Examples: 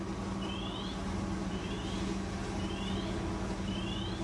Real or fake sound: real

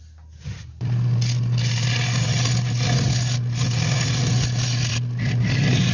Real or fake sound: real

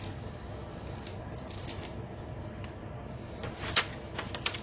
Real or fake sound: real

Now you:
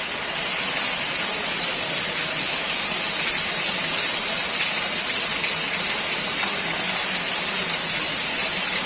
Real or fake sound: real